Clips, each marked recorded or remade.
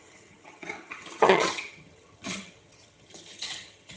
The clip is remade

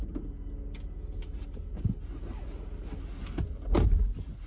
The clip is recorded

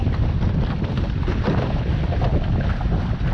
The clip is recorded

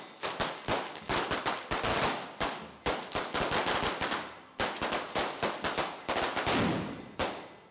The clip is recorded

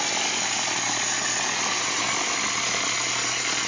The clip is recorded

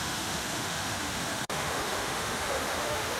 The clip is remade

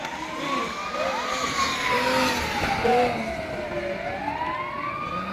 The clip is recorded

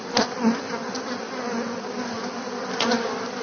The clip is recorded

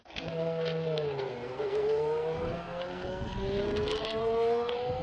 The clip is remade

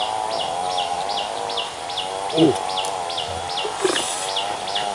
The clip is recorded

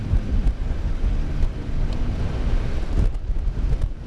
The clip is recorded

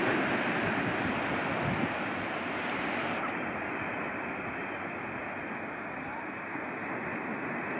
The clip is recorded